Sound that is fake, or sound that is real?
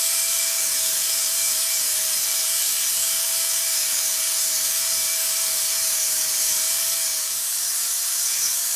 fake